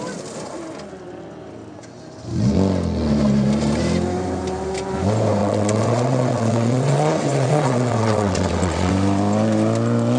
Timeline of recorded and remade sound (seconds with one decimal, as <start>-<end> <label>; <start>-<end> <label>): 0.0-5.4 recorded; 5.4-8.9 remade; 8.9-10.2 recorded